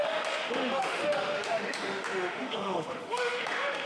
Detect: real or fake fake